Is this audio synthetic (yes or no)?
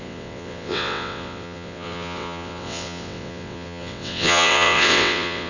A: yes